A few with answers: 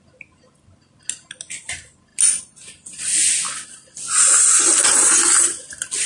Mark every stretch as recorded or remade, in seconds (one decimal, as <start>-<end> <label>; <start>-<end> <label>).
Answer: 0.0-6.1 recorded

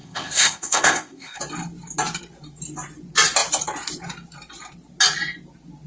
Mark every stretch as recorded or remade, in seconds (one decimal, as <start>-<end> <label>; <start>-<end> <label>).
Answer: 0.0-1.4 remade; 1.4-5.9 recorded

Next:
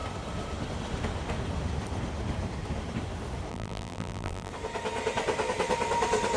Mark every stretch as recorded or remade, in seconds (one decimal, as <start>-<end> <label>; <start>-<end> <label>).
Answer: 0.0-3.5 recorded; 3.5-4.5 remade; 4.5-6.4 recorded

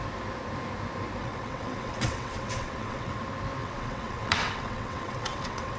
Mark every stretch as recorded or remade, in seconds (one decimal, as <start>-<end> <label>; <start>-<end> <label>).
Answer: 0.0-1.2 recorded; 1.2-3.2 remade; 3.2-3.6 recorded; 3.6-5.8 remade

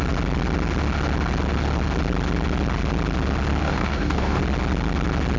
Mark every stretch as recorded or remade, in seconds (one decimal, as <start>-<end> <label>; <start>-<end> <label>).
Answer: 0.0-3.6 recorded; 3.6-4.4 remade; 4.4-5.4 recorded

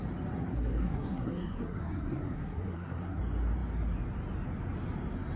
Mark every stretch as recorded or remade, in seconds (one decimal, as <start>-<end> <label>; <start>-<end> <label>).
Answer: 0.0-0.5 recorded; 0.5-3.2 remade; 3.2-5.4 recorded